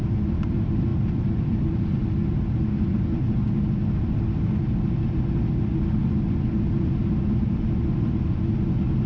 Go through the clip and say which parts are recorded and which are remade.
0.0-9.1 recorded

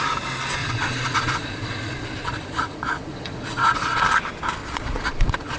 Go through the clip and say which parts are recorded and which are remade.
0.0-0.6 recorded; 0.6-4.0 remade; 4.0-4.6 recorded; 4.6-5.6 remade

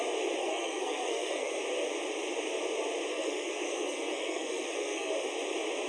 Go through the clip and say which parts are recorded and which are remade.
0.0-0.4 recorded; 0.4-1.6 remade; 1.6-3.1 recorded; 3.1-5.1 remade; 5.1-5.9 recorded

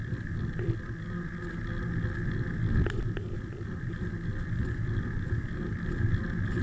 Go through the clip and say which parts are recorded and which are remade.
0.0-6.6 recorded